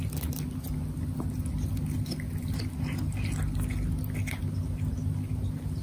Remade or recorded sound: recorded